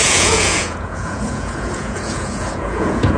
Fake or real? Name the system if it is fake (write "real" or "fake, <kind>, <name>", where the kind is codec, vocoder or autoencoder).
fake, vocoder, Vocos